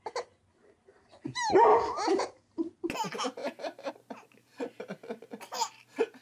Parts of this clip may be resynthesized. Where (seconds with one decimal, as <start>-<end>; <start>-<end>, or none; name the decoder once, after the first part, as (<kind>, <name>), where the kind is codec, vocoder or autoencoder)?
3.4-3.9 (vocoder, BigVGAN v2)